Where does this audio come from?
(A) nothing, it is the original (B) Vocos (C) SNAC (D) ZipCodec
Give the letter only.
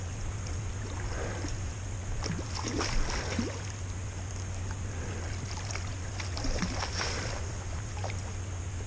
A